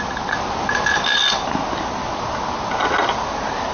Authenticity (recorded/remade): recorded